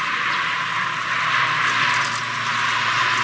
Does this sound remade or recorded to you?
recorded